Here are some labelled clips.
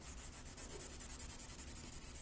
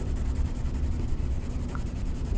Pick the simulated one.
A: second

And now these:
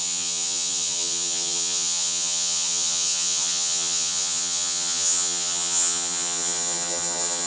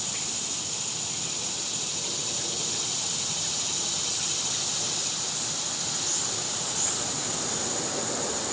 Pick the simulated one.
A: first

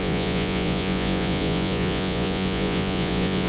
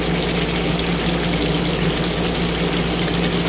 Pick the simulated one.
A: first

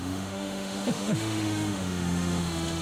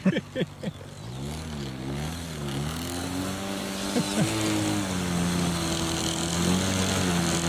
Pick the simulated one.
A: first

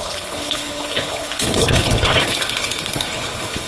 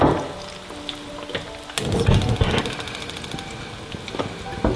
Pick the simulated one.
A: first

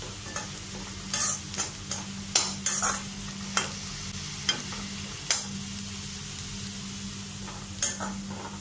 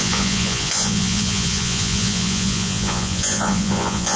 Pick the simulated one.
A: second